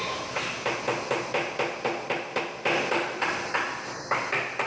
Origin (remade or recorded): recorded